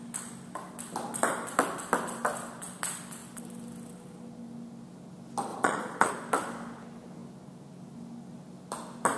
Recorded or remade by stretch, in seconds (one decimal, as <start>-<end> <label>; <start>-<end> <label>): 0.0-5.5 recorded; 5.5-6.1 remade; 6.1-9.2 recorded